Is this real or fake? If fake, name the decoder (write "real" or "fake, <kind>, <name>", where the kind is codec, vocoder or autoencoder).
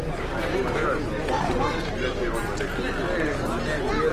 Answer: real